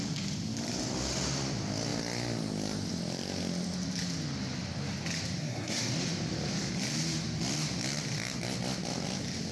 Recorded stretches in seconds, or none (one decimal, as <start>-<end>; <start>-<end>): 0.0-5.4; 5.9-9.5